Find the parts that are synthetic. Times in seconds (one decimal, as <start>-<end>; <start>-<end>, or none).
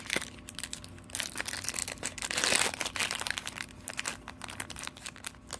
1.8-3.9